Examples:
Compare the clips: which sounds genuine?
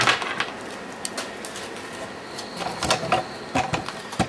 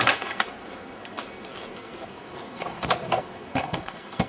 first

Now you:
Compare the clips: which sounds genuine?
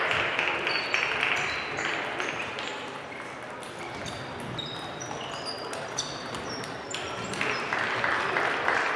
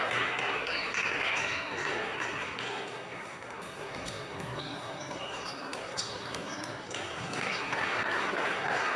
first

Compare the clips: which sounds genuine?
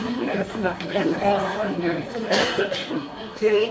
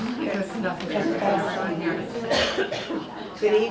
second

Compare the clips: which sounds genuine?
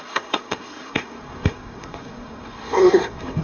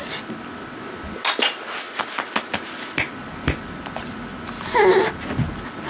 second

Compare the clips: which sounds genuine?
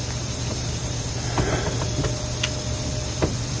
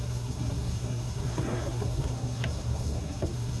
first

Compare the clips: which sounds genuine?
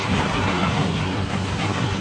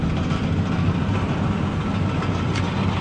second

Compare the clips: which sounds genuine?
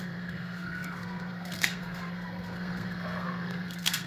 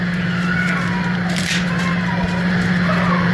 second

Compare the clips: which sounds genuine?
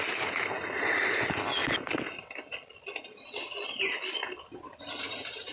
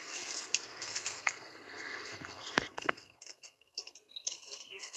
first